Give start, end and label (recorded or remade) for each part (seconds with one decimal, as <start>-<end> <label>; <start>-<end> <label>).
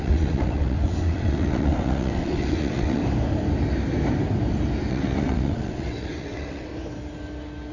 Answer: 0.0-3.0 remade; 3.0-4.9 recorded; 4.9-6.7 remade; 6.7-7.7 recorded